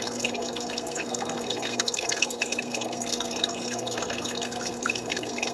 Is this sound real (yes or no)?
no